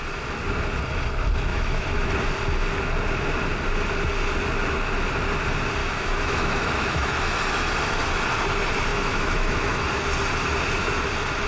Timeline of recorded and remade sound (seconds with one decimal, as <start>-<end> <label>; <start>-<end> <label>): 0.0-1.5 recorded; 1.5-2.1 remade; 2.1-5.8 recorded; 5.8-7.2 remade; 7.2-8.9 recorded; 8.9-9.8 remade; 9.8-11.5 recorded